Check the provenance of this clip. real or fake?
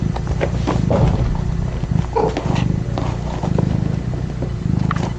real